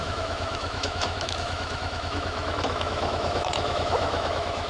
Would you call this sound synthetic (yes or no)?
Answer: yes